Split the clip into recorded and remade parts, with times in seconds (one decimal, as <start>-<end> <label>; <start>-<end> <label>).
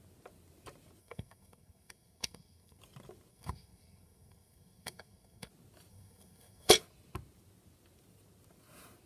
0.0-1.0 recorded; 1.0-2.8 remade; 2.8-3.3 recorded; 3.3-5.5 remade; 5.5-5.9 recorded; 5.9-6.7 remade; 6.7-9.1 recorded